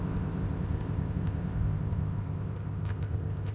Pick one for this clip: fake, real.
fake